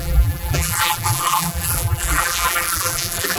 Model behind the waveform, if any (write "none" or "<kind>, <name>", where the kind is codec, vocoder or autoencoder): vocoder, BigVGAN v2